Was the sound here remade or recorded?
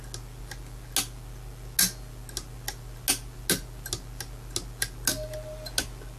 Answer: recorded